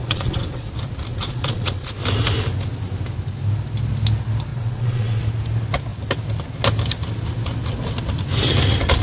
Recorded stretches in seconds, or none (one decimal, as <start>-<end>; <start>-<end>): 0.7-1.1; 1.9-4.5; 5.2-9.0